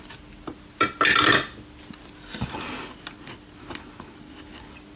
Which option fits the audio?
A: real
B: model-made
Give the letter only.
A